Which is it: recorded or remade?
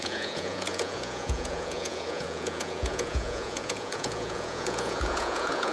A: remade